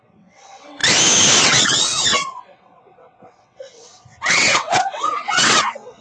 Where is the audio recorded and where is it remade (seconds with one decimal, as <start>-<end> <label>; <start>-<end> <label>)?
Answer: 0.0-0.8 remade; 0.8-1.4 recorded; 1.4-6.0 remade